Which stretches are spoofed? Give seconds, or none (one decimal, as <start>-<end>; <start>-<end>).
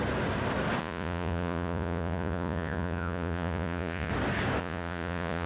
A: 0.8-4.1; 4.6-5.5